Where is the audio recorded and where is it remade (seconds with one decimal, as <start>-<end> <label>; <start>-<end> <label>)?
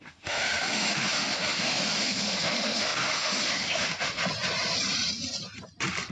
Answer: 0.0-4.2 remade; 4.2-6.1 recorded